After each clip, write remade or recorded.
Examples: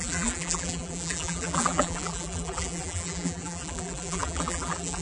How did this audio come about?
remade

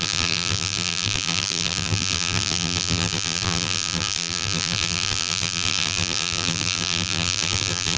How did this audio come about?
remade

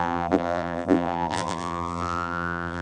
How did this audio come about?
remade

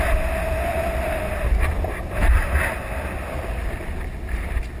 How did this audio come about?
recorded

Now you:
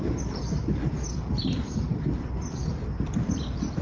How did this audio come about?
remade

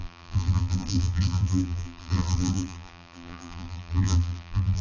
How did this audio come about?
remade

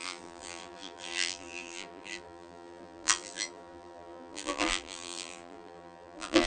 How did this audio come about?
remade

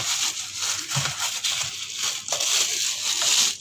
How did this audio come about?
recorded